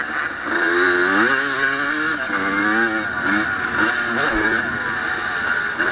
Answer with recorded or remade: recorded